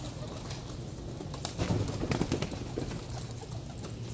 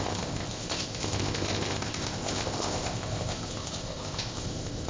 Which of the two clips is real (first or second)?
first